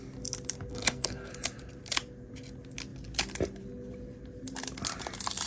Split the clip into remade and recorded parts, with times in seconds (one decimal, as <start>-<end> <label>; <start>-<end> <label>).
0.0-0.7 recorded; 0.7-1.3 remade; 1.3-5.5 recorded